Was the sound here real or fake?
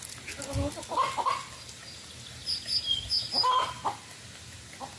real